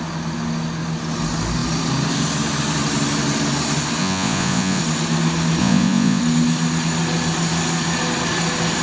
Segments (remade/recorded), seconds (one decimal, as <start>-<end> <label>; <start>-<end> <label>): 0.0-4.0 recorded; 4.0-4.8 remade; 4.8-5.6 recorded; 5.6-6.2 remade; 6.2-8.8 recorded